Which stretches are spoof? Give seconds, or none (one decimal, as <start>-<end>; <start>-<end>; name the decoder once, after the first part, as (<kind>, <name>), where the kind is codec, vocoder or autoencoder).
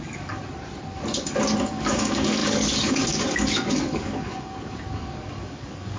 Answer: 0.0-0.4 (codec, DAC); 1.6-6.0